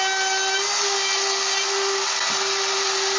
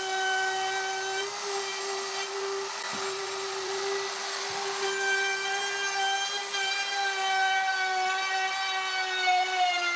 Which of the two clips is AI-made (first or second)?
second